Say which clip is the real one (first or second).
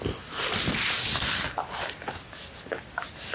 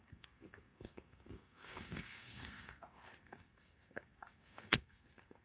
first